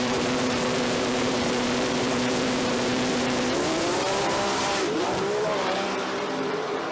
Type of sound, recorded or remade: remade